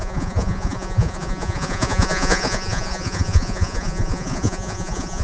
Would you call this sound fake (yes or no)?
yes